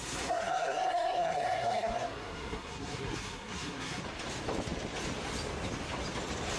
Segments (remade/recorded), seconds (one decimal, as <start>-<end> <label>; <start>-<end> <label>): 0.0-4.0 remade; 4.0-6.6 recorded

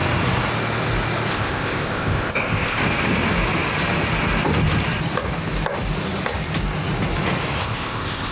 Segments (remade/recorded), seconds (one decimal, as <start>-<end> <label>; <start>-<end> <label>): 0.0-1.3 recorded; 1.3-2.8 remade; 2.8-7.6 recorded; 7.6-8.3 remade

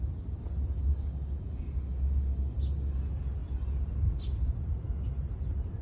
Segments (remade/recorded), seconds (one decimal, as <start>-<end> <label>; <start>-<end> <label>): 0.0-0.9 recorded; 0.9-3.0 remade; 3.0-5.8 recorded

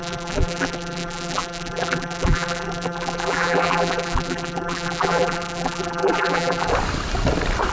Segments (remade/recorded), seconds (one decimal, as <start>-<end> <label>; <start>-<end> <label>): 0.0-6.7 remade; 6.7-7.7 recorded

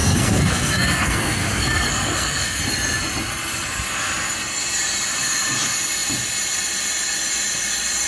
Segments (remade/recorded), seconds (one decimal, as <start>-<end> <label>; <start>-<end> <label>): 0.0-2.6 remade; 2.6-8.1 recorded

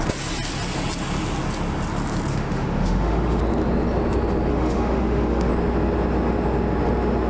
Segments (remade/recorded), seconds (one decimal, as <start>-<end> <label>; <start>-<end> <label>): 0.0-2.3 recorded; 2.3-3.4 remade; 3.4-4.5 recorded; 4.5-5.5 remade; 5.5-7.3 recorded

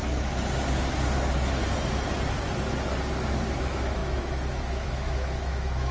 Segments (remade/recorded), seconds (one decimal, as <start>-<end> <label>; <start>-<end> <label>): 0.0-3.5 recorded; 3.5-5.9 remade